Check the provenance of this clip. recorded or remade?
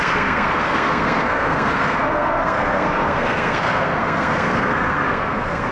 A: remade